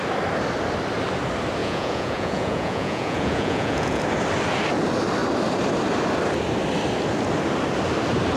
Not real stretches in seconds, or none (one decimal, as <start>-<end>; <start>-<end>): 1.6-4.0